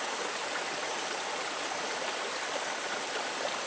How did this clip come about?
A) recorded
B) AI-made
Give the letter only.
A